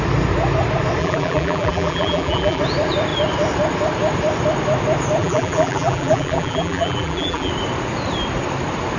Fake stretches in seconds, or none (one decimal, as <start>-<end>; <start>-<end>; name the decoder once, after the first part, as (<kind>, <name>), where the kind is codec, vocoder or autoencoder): 1.0-2.6 (vocoder, BigVGAN v2); 5.2-7.5